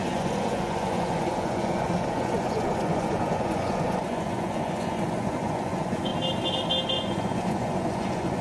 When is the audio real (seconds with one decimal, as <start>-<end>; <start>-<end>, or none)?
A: 6.1-6.9